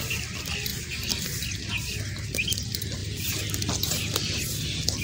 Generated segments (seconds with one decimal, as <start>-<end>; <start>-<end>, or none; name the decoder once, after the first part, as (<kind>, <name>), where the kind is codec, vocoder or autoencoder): none